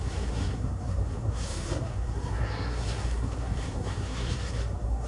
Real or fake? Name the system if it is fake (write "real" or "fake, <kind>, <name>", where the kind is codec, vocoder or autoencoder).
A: fake, codec, SNAC